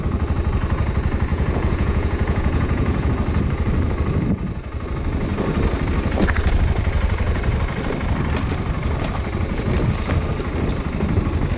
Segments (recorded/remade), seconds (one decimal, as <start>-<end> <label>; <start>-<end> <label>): 0.0-1.3 recorded; 1.3-3.1 remade; 3.1-11.6 recorded